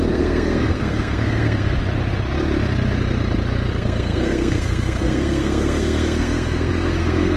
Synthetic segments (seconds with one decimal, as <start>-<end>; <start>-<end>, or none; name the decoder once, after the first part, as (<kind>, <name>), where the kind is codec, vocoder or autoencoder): 0.0-1.8 (codec, SNAC); 3.7-7.4